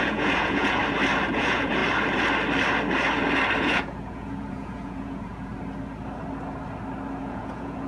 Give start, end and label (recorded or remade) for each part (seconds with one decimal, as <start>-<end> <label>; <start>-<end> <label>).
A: 0.0-0.8 remade; 0.8-1.3 recorded; 1.3-1.8 remade; 1.8-3.6 recorded; 3.6-5.5 remade; 5.5-7.2 recorded; 7.2-7.9 remade